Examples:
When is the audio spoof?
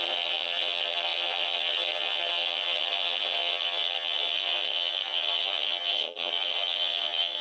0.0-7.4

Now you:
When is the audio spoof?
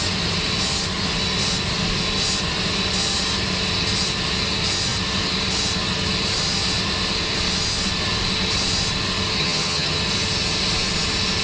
9.4-10.0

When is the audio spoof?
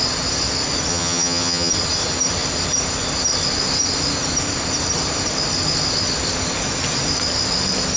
0.9-1.7